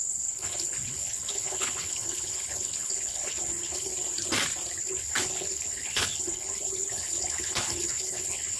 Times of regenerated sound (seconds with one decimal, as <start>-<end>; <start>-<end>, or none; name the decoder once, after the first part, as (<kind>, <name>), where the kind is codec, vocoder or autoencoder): 0.0-3.9 (codec, HILCodec); 4.8-8.6